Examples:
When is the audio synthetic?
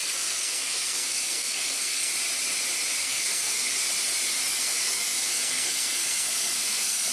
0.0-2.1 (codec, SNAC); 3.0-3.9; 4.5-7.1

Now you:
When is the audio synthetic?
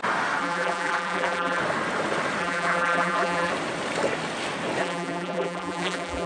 0.4-1.6 (vocoder, BigVGAN v2); 2.4-3.5; 4.8-6.3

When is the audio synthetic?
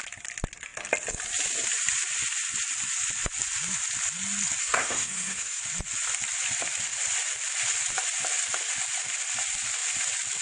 4.6-5.6 (codec, SNAC)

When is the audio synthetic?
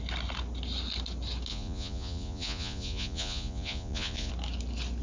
1.5-4.3 (vocoder, Vocos)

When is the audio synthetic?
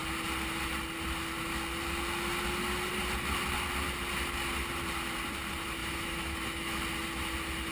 5.8-6.7 (autoencoder, DAC-VAE)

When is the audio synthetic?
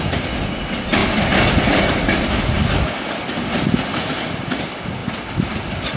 none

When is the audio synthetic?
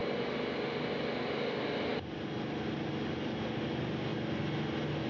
none